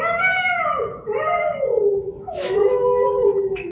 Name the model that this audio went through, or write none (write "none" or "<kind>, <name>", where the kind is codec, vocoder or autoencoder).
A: autoencoder, DAC-VAE